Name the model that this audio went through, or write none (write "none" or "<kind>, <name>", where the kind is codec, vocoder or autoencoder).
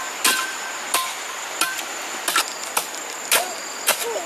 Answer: none